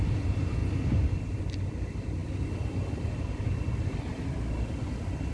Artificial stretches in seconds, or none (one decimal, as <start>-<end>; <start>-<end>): none